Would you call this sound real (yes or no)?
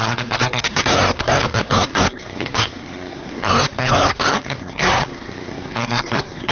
no